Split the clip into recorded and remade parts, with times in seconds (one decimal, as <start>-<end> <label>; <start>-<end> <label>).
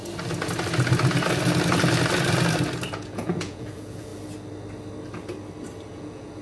0.0-2.9 recorded; 2.9-4.1 remade; 4.1-5.9 recorded; 5.9-6.4 remade